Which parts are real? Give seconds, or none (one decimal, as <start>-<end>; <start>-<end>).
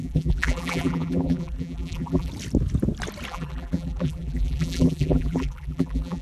2.3-3.3